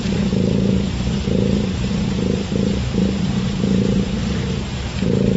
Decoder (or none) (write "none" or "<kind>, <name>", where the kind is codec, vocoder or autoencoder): vocoder, BigVGAN v2